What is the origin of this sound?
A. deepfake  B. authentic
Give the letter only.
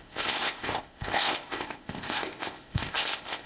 A